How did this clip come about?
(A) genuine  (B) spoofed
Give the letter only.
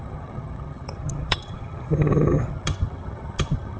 B